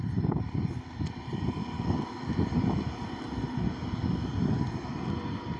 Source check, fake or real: real